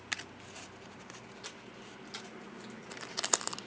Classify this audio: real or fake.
real